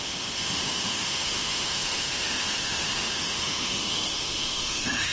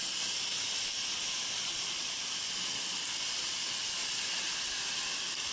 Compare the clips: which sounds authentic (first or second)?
second